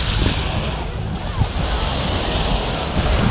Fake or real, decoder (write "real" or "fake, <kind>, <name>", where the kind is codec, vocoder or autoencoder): real